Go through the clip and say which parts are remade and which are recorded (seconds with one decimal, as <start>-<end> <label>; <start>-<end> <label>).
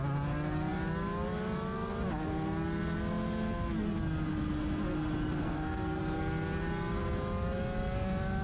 0.0-5.4 recorded; 5.4-6.0 remade; 6.0-8.4 recorded